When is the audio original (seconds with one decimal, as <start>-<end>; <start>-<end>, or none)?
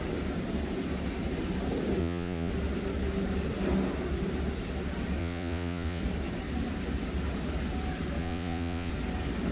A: 0.0-2.0; 2.5-5.2; 6.0-8.2; 8.9-9.5